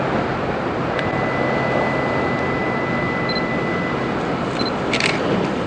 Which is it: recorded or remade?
recorded